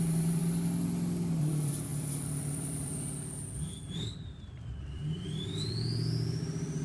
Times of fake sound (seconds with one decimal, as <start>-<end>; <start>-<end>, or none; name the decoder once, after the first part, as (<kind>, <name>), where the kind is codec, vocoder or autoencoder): 0.0-0.4 (vocoder, BigVGAN v2); 1.4-6.8